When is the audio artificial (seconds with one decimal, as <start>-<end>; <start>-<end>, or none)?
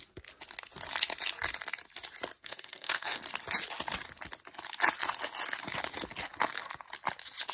2.4-3.2